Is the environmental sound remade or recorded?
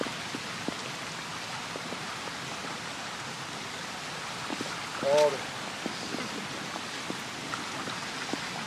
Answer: recorded